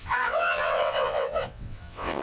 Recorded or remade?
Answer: remade